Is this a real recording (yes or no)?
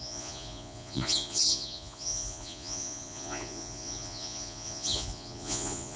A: no